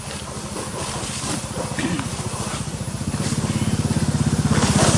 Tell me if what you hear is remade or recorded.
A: recorded